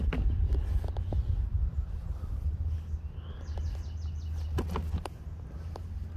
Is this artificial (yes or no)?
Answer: no